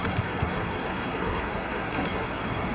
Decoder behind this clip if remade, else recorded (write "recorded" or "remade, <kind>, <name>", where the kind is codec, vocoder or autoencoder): remade, codec, SNAC